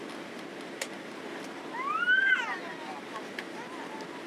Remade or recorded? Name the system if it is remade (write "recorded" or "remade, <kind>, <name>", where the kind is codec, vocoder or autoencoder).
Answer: recorded